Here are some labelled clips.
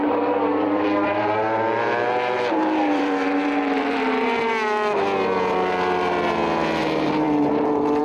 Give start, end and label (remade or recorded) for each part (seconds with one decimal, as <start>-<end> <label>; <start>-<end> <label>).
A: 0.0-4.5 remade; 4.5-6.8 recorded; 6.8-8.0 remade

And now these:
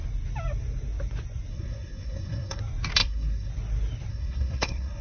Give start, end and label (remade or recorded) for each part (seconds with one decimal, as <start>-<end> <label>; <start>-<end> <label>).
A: 0.0-1.5 recorded; 1.5-2.6 remade; 2.6-3.0 recorded; 3.0-3.5 remade; 3.5-4.1 recorded; 4.1-5.0 remade

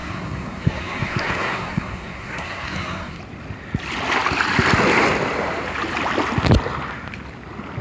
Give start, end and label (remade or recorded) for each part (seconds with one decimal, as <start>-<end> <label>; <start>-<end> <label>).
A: 0.0-3.2 remade; 3.2-7.8 recorded

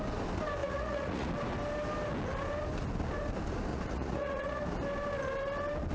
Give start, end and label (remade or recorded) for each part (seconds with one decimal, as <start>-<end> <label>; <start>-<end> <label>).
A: 0.0-0.6 recorded; 0.6-1.3 remade; 1.3-3.7 recorded; 3.7-4.6 remade; 4.6-5.9 recorded

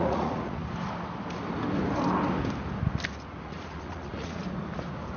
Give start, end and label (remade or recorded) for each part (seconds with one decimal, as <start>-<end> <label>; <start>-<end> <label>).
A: 0.0-0.6 remade; 0.6-3.3 recorded; 3.3-4.4 remade; 4.4-5.2 recorded